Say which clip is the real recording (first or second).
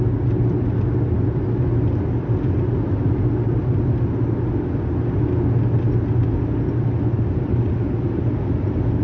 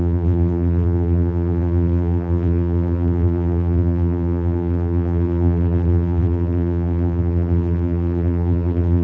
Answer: first